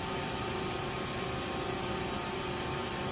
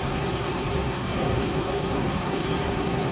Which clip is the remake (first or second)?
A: second